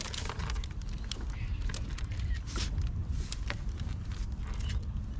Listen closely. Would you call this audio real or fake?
real